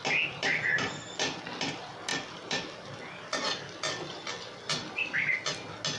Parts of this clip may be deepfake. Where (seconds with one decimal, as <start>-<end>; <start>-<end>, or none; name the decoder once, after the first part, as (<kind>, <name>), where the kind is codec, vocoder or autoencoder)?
none